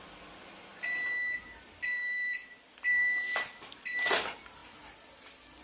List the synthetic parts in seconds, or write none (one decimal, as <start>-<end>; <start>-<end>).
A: 0.0-0.7; 1.4-4.6